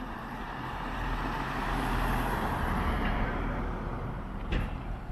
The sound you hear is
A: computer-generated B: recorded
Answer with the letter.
A